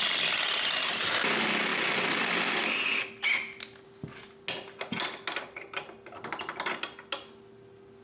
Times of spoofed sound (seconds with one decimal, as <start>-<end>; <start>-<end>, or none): none